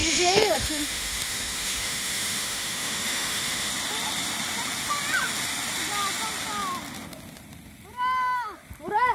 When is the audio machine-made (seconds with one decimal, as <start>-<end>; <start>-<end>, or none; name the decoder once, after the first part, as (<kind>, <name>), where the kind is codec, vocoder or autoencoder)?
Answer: 0.0-3.7 (autoencoder, DAC-VAE)